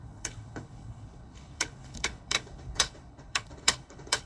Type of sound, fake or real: fake